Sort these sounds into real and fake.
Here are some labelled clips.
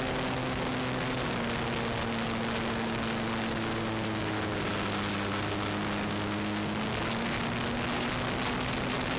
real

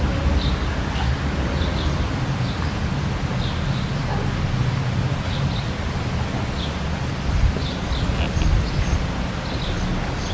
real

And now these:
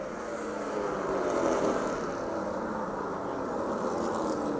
real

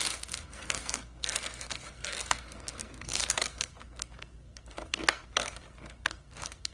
fake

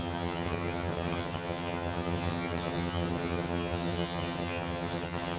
fake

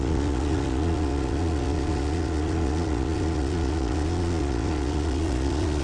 fake